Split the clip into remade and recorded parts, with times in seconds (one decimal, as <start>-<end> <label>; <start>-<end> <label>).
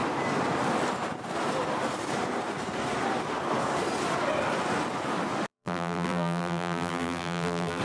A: 0.0-5.5 recorded; 5.5-7.8 remade